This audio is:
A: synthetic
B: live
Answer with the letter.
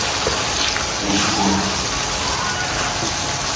B